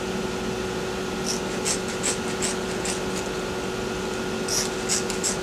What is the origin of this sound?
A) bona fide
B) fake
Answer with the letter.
A